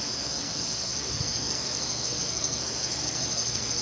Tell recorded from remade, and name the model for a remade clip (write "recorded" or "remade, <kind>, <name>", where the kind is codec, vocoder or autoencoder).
remade, codec, SNAC